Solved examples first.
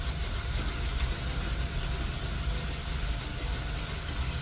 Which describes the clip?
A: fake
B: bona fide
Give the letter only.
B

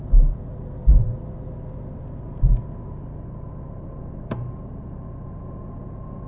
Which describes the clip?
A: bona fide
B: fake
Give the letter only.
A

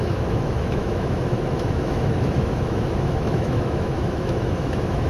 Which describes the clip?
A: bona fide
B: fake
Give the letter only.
B